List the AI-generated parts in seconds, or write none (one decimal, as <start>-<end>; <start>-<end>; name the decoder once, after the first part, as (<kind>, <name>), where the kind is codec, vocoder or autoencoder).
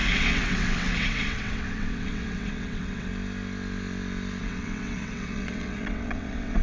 0.0-3.1 (vocoder, WaveNeXt); 4.4-6.6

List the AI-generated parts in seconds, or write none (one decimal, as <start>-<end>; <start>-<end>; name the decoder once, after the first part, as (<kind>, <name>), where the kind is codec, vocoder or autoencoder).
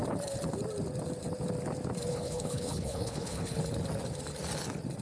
2.1-3.6 (codec, HILCodec)